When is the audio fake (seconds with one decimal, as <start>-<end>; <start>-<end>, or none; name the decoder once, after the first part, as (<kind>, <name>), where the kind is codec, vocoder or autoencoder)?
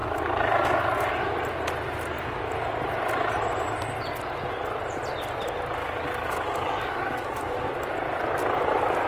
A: 0.0-1.1 (codec, DAC); 5.8-7.5